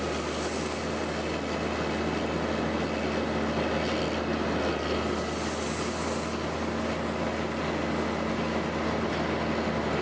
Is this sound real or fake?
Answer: real